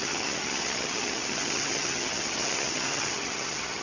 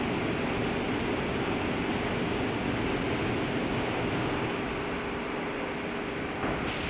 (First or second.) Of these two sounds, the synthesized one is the first